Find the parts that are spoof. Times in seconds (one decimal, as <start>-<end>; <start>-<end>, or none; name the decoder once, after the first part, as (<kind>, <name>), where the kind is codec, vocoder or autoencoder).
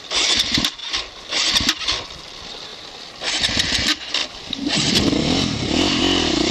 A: 0.0-0.8 (vocoder, BigVGAN v2); 1.8-2.7; 3.3-4.2; 6.0-6.5